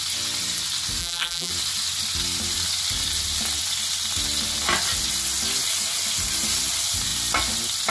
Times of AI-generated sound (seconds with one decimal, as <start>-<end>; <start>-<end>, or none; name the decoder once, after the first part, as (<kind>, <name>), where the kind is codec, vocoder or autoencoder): 1.0-1.5 (vocoder, BigVGAN v2)